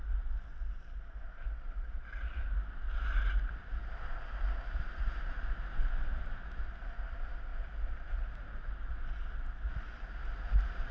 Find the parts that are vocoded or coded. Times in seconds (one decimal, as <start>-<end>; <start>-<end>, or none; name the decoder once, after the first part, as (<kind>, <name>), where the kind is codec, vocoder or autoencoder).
none